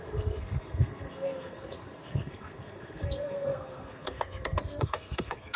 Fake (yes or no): yes